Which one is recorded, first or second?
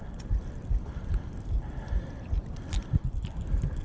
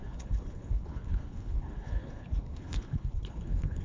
first